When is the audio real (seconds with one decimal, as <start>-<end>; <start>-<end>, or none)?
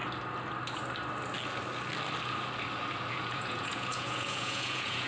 0.0-3.1